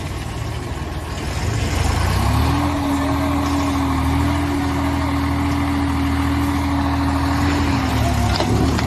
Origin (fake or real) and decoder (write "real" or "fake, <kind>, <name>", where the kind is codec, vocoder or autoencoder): real